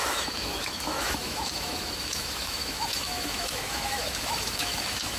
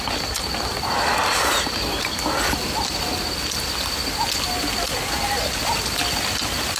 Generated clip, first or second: first